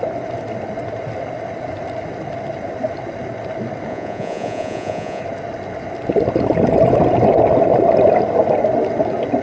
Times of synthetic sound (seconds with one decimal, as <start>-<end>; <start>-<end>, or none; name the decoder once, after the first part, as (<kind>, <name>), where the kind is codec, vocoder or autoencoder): 3.9-5.2 (vocoder, Vocos)